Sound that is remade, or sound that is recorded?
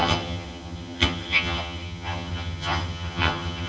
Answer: remade